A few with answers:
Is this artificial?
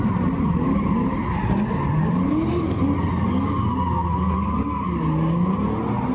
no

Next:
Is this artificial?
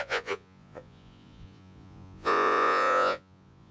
yes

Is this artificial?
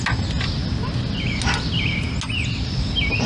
no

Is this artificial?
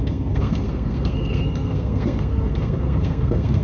yes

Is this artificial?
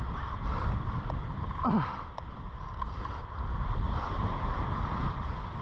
no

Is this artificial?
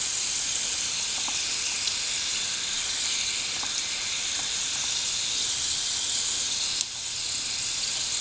no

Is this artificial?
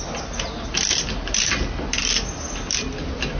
no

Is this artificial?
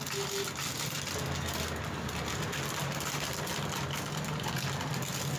no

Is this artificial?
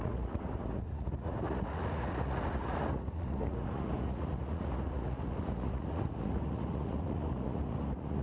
yes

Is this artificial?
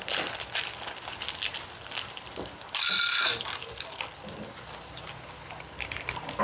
no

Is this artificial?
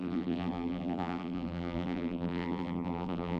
yes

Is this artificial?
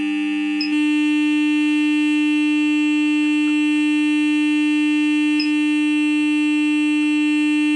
no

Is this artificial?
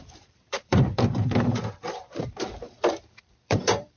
yes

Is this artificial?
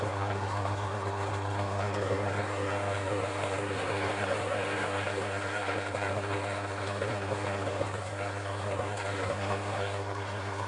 yes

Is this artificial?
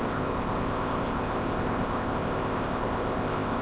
yes